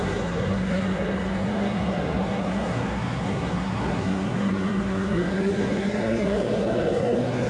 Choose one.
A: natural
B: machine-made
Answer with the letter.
B